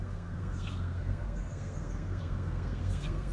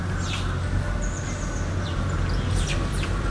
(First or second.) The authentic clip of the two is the second